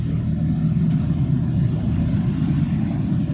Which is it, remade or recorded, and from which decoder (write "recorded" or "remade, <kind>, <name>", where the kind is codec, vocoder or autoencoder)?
recorded